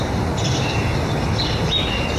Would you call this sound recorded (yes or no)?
yes